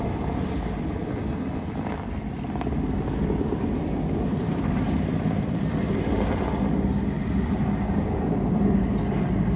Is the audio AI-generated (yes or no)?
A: yes